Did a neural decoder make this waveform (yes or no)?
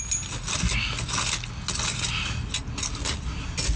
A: no